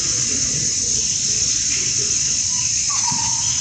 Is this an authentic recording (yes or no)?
no